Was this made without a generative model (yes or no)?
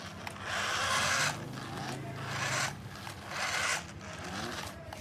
yes